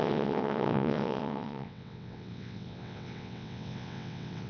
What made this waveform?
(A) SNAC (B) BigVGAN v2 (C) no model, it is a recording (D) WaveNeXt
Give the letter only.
D